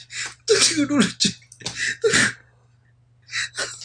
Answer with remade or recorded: recorded